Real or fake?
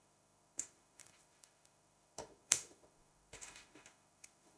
fake